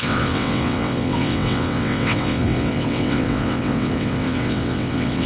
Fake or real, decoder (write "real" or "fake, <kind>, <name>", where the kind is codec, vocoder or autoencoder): fake, vocoder, WaveNeXt